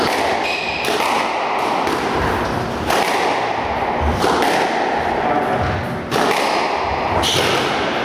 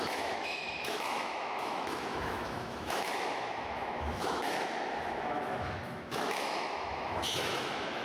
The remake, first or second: second